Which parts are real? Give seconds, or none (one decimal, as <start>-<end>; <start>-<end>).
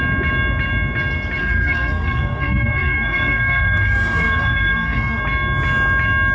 0.0-1.4; 5.2-6.3